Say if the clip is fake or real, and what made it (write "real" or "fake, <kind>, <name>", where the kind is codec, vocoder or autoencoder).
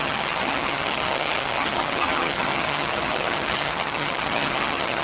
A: fake, vocoder, HiFi-GAN